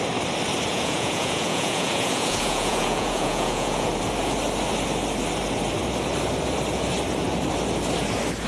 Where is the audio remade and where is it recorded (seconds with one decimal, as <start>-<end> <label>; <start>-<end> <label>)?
0.0-0.7 recorded; 0.7-3.9 remade; 3.9-8.5 recorded